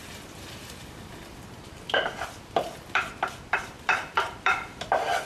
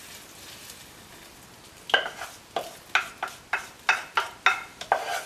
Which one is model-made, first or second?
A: first